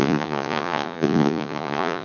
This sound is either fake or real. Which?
fake